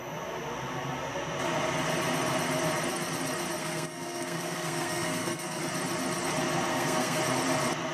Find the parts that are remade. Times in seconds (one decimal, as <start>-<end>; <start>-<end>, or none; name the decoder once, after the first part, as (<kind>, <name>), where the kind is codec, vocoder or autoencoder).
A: 3.6-5.6 (codec, SNAC); 6.7-7.2